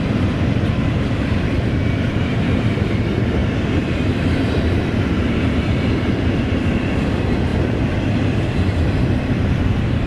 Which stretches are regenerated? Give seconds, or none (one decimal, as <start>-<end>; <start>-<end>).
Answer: 0.0-7.5; 8.2-10.1